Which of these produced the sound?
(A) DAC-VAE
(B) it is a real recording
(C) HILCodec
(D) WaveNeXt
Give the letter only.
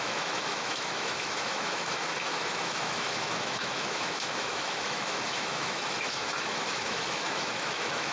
A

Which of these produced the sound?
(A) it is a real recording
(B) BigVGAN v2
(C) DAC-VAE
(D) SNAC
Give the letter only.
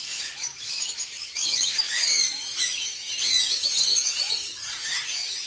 C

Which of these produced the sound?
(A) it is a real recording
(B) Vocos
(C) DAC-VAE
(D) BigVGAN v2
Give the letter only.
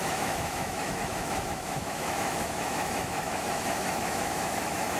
C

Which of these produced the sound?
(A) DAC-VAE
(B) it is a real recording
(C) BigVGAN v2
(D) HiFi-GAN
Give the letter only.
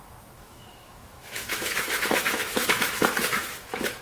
A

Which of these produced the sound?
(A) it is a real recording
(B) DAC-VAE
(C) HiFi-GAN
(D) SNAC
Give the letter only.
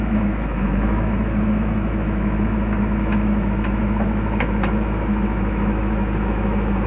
B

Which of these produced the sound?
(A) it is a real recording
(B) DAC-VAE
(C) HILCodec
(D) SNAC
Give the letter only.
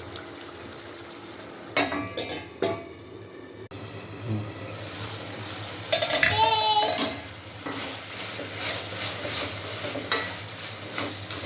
A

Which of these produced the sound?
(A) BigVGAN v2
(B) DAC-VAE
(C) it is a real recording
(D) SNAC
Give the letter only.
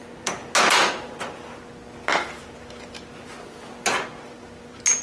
C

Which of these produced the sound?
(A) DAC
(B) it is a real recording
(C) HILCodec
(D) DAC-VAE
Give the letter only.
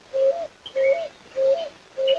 B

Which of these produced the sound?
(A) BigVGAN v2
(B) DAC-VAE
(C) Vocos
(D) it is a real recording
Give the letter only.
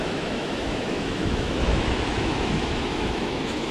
B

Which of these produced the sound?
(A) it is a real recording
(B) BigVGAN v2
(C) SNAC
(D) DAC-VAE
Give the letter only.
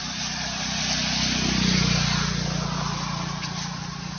A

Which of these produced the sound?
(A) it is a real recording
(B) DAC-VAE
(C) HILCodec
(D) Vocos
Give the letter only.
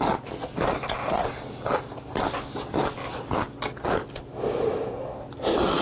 A